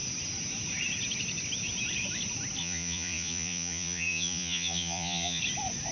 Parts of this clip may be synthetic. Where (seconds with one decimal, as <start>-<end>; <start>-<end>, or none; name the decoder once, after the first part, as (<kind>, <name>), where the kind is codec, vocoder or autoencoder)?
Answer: 2.6-5.4 (vocoder, Vocos)